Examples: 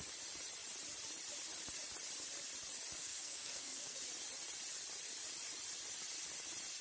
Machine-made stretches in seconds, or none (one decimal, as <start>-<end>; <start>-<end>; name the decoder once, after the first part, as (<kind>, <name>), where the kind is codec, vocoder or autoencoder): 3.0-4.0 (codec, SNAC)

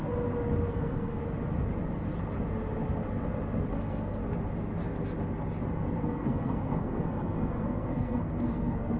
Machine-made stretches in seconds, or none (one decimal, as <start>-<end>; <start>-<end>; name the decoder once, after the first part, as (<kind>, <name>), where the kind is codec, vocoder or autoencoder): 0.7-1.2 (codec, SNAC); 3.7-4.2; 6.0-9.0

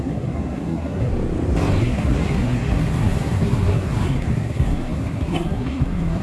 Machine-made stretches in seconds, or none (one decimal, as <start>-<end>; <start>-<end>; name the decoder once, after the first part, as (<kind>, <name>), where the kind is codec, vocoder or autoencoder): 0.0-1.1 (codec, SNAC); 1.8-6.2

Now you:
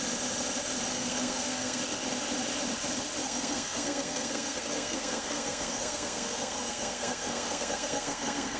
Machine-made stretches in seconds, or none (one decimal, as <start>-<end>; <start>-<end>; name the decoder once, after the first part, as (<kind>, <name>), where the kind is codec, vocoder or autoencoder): 0.9-1.8 (codec, SNAC); 3.2-8.6